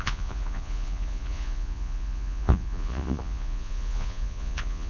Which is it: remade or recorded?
remade